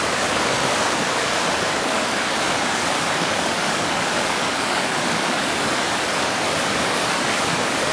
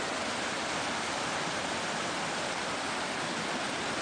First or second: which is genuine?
second